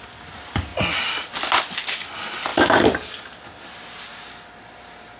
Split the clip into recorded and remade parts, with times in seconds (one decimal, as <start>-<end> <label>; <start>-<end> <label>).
0.0-5.2 recorded